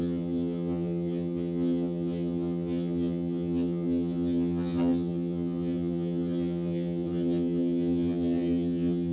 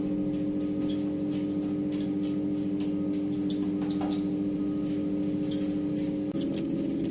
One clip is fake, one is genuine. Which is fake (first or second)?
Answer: first